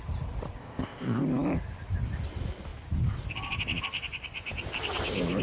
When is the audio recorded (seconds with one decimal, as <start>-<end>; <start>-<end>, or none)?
0.0-0.6; 1.2-5.4